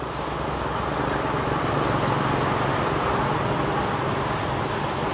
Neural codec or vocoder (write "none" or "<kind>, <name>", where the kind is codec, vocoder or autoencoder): none